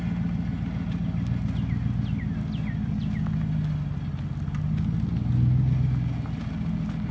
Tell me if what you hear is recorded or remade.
recorded